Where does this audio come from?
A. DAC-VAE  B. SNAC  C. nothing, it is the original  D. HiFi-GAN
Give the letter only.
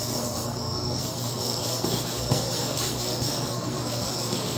B